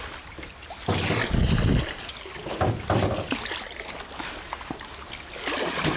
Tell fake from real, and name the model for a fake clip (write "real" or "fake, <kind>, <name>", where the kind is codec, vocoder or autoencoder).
real